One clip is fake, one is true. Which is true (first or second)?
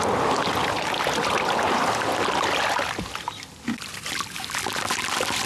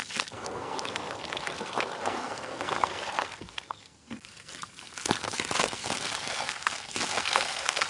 first